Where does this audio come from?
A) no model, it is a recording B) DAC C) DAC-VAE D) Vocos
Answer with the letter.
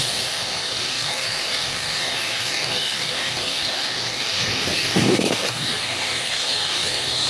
B